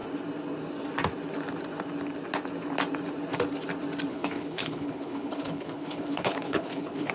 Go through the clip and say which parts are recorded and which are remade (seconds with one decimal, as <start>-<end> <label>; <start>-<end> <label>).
0.0-4.1 recorded; 4.1-7.1 remade